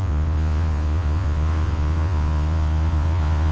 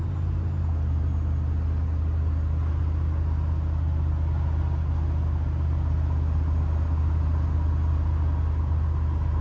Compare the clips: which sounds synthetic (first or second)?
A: first